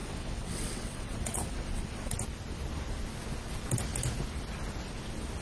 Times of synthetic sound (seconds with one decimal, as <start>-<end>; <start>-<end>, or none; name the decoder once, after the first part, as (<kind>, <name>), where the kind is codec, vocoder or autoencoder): 0.0-2.1 (vocoder, WaveNeXt)

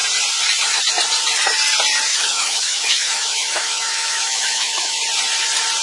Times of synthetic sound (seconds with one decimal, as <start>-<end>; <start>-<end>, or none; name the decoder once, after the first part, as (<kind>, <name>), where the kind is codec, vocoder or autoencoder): 2.1-5.0 (autoencoder, DAC-VAE)

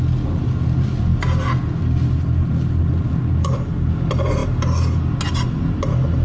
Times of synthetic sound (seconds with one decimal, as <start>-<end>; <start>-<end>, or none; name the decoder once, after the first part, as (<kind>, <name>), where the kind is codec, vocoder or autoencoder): none

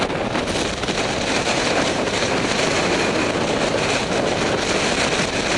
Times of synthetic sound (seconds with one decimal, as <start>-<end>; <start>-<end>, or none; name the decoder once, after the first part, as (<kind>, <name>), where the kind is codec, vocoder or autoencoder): 0.8-4.2 (vocoder, BigVGAN v2)